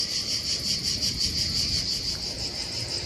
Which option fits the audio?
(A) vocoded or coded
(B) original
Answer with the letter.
B